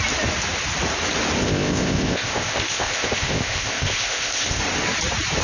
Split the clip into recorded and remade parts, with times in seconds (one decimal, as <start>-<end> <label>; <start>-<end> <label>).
0.0-1.4 recorded; 1.4-4.6 remade; 4.6-5.4 recorded